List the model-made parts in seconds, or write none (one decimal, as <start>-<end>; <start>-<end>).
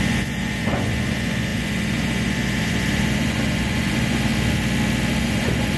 0.0-4.3; 5.2-5.8